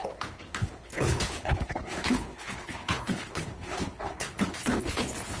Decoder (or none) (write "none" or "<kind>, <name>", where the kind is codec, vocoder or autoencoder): codec, HILCodec